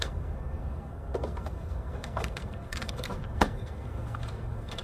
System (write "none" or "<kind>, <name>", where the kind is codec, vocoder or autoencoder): codec, SNAC